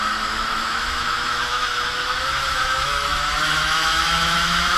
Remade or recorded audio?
remade